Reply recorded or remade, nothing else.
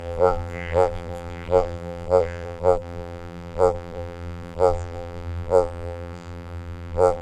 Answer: remade